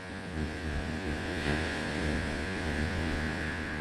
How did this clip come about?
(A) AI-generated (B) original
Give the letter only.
A